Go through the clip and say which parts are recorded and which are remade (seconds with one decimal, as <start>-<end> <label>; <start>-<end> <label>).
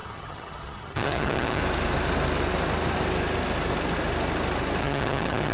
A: 0.0-1.6 remade; 1.6-4.8 recorded; 4.8-5.5 remade